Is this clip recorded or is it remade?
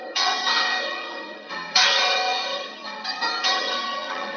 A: remade